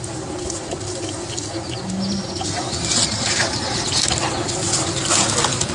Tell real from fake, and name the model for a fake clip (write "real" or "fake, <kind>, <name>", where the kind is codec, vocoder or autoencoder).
real